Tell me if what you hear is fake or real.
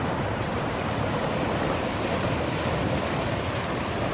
real